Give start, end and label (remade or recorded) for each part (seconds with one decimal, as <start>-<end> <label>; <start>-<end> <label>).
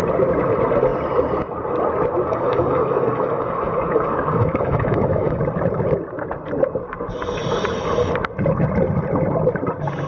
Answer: 0.0-2.3 recorded; 2.3-5.4 remade; 5.4-10.1 recorded